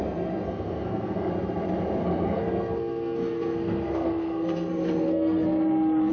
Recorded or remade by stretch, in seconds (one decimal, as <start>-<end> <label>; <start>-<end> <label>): 0.0-1.3 remade; 1.3-2.0 recorded; 2.0-6.1 remade